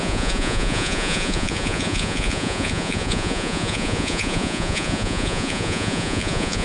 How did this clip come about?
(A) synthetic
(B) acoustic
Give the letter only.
A